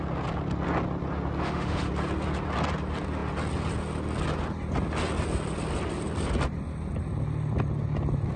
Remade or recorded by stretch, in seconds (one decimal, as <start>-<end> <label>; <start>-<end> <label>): 0.0-1.4 recorded; 1.4-1.9 remade; 1.9-8.4 recorded